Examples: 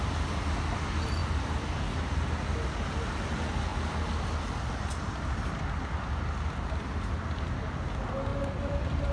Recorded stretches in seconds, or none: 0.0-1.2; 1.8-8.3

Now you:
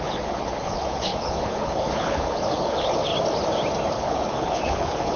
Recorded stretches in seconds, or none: 3.1-3.9

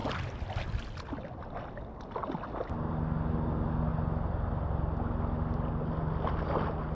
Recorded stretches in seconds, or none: 0.0-6.9

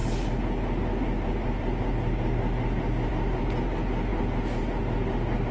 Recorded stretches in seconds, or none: 0.0-5.5